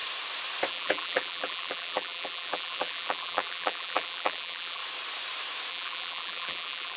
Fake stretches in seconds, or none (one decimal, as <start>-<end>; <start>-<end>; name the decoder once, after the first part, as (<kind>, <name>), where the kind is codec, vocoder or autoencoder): 0.7-4.8 (vocoder, BigVGAN v2); 5.7-7.0